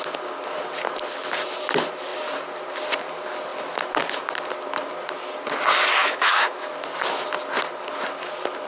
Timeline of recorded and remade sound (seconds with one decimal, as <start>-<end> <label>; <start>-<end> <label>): 0.0-6.0 recorded; 6.0-6.7 remade; 6.7-8.7 recorded